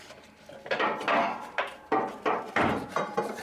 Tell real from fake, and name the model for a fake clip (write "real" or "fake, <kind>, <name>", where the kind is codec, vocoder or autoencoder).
real